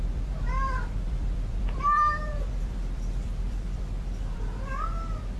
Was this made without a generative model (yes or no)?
no